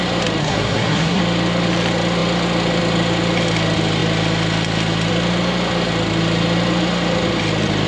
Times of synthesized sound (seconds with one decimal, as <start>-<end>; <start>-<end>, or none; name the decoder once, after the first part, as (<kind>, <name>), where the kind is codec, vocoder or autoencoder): 0.4-1.2 (codec, SNAC)